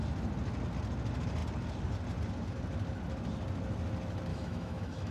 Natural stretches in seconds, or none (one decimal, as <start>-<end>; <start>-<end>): 0.0-4.3